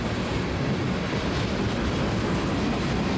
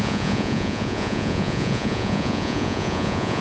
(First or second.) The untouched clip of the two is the first